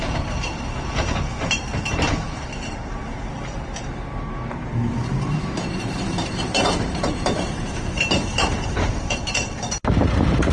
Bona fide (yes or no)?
no